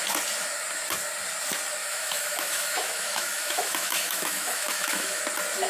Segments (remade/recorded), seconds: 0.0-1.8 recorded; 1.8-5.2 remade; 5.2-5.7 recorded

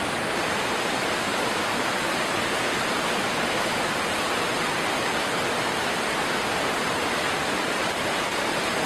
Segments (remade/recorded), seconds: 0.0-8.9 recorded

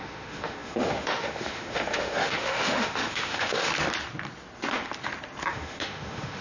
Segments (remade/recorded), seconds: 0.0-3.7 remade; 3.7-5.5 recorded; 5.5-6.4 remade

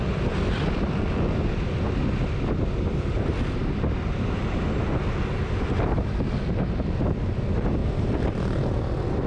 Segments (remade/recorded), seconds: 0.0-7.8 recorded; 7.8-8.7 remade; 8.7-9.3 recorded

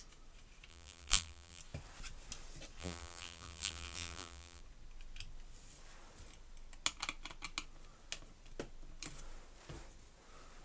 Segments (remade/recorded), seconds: 0.0-0.7 recorded; 0.7-1.6 remade; 1.6-2.8 recorded; 2.8-4.6 remade; 4.6-10.6 recorded

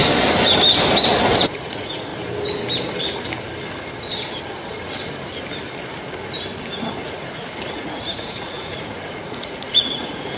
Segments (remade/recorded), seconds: 0.0-1.4 recorded; 1.4-2.1 remade; 2.1-6.9 recorded; 6.9-10.4 remade